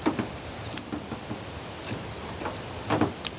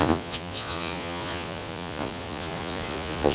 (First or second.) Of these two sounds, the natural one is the first